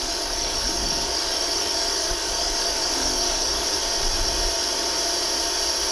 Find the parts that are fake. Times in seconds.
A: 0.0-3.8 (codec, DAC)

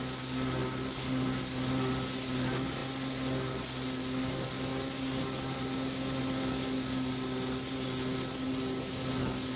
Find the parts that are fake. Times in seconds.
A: none